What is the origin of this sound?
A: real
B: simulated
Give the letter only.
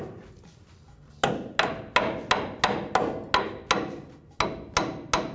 A